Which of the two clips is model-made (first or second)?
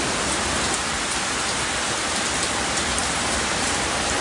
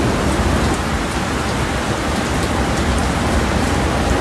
first